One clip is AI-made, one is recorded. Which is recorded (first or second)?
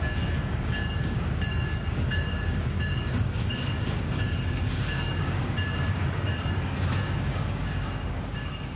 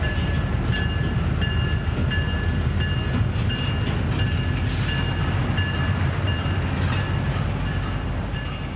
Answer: second